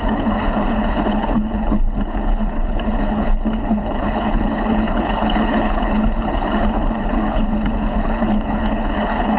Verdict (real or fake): fake